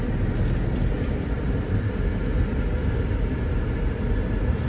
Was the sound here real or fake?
real